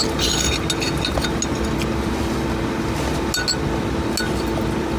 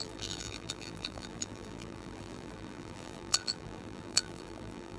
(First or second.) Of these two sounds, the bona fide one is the first